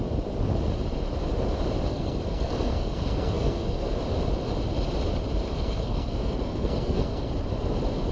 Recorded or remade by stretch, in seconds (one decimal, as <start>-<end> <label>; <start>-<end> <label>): 0.0-1.9 recorded; 1.9-3.9 remade; 3.9-5.5 recorded; 5.5-7.3 remade; 7.3-8.1 recorded